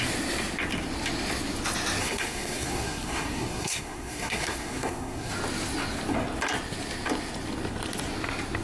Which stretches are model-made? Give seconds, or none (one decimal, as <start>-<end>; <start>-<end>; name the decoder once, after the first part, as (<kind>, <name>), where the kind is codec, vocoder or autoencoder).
2.0-5.3 (codec, SNAC)